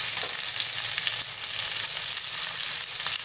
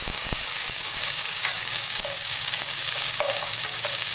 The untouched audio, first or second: first